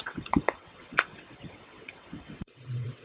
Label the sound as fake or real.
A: fake